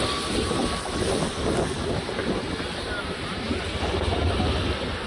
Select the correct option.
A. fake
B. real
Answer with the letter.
B